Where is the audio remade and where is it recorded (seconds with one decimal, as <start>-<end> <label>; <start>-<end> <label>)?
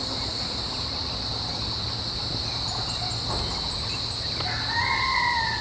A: 0.0-5.6 recorded